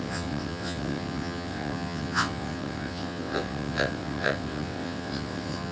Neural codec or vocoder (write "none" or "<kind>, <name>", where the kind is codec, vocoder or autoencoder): vocoder, WaveNeXt